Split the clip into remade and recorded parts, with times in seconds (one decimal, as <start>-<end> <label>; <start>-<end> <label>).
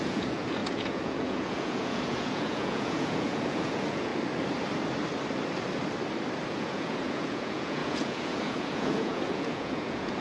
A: 0.0-4.1 remade; 4.1-6.5 recorded; 6.5-10.2 remade